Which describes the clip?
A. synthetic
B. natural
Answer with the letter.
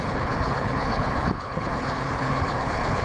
A